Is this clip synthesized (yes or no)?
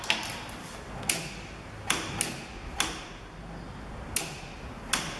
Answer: no